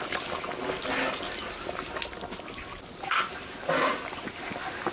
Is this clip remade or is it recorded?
recorded